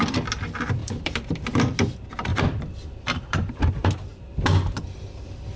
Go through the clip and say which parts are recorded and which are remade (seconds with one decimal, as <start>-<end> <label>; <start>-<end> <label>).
0.0-0.8 recorded; 0.8-1.3 remade; 1.3-2.3 recorded; 2.3-3.5 remade; 3.5-5.6 recorded